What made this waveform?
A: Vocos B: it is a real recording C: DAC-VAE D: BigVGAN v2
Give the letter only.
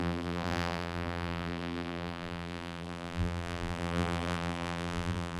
D